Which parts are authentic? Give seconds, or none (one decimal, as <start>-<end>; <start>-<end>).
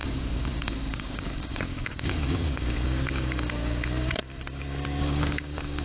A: 4.2-5.0